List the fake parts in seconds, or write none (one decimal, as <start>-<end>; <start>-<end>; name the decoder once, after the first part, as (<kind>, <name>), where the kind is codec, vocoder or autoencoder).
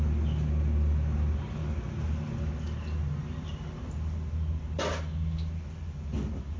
none